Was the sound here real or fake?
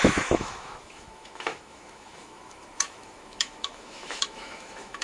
fake